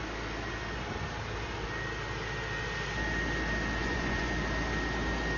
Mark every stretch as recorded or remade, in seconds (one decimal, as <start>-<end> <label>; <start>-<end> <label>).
0.0-3.8 recorded; 3.8-4.3 remade; 4.3-5.4 recorded